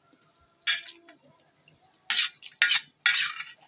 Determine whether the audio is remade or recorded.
recorded